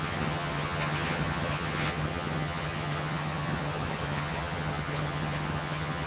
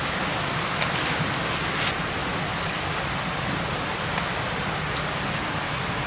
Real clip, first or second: second